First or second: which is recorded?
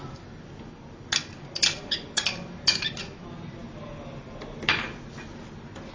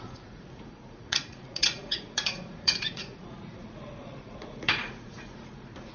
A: first